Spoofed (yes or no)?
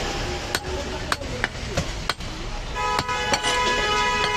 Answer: no